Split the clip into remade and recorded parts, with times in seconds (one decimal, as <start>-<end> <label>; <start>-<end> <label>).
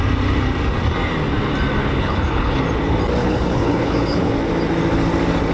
0.0-1.8 recorded; 1.8-2.6 remade; 2.6-3.2 recorded; 3.2-4.3 remade; 4.3-5.5 recorded